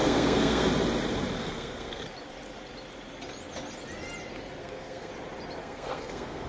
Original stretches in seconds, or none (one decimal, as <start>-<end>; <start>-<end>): 0.7-1.4; 2.0-4.6; 5.1-5.6